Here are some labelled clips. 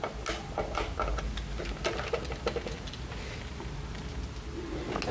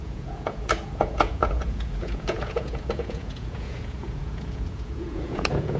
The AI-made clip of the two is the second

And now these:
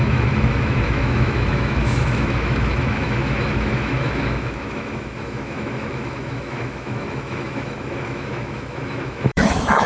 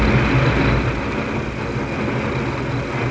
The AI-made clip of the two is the first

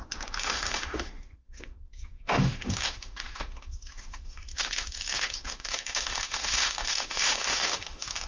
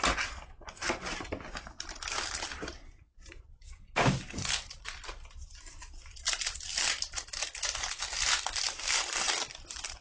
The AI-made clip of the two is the first